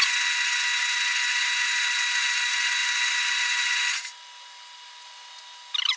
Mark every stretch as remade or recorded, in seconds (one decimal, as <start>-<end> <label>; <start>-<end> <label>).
0.0-6.0 recorded